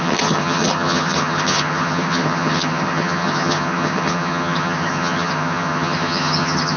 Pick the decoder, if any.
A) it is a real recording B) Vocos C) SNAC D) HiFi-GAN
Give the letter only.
D